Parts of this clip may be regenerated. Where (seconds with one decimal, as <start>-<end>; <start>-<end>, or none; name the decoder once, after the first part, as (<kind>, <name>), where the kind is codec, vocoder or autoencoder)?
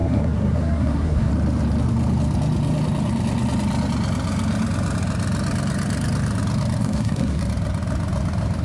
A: 0.0-1.3 (codec, SNAC); 6.8-7.4